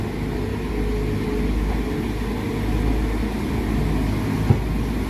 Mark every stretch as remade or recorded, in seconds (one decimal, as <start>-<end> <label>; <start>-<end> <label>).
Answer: 0.0-5.1 recorded